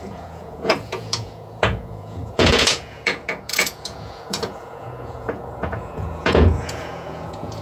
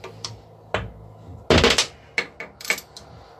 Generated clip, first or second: first